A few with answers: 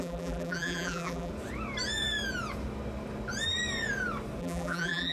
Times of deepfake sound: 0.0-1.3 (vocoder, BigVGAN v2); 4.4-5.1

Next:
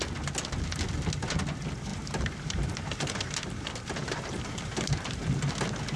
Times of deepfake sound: 1.9-5.4 (vocoder, BigVGAN v2)

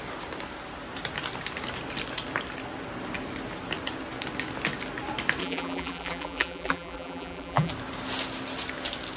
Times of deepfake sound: 5.4-7.7 (vocoder, BigVGAN v2)